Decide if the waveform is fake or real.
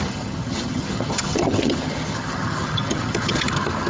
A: fake